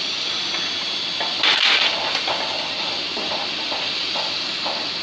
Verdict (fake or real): fake